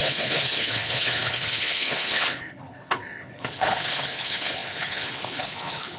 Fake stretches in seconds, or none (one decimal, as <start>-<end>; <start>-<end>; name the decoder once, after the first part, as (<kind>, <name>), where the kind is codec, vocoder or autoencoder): 0.0-6.0 (codec, HILCodec)